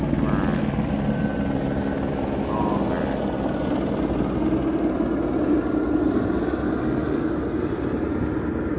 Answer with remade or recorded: recorded